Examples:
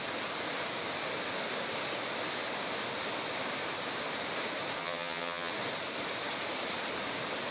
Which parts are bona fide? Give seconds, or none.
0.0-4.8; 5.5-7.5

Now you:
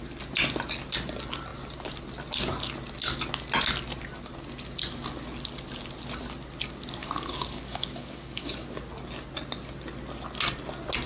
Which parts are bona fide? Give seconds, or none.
0.0-7.0; 8.8-11.1

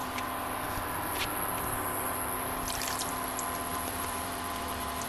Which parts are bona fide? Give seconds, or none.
0.0-3.7; 4.3-5.1

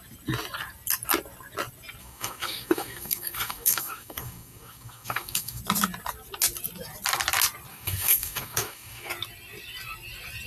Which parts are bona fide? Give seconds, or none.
0.0-2.0; 5.6-7.7; 9.1-10.5